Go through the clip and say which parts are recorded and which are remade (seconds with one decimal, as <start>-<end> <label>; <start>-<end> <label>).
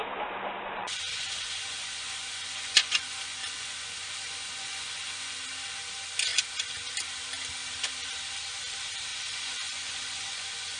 0.0-0.8 recorded; 0.8-5.4 remade; 5.4-9.1 recorded; 9.1-10.8 remade